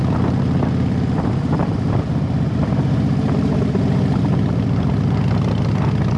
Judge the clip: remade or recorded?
remade